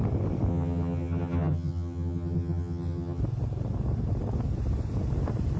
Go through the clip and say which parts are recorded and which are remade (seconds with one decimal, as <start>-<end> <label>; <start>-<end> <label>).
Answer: 0.0-0.5 recorded; 0.5-3.2 remade; 3.2-5.6 recorded